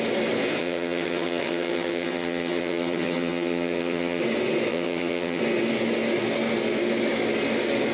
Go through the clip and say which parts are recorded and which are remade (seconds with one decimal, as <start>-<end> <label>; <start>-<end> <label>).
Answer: 0.0-0.6 recorded; 0.6-4.2 remade; 4.2-4.7 recorded; 4.7-5.4 remade; 5.4-7.9 recorded